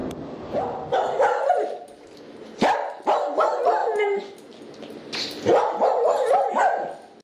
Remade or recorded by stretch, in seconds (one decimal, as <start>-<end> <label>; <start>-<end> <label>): 0.0-7.2 recorded